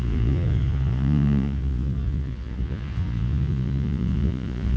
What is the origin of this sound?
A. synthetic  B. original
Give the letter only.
A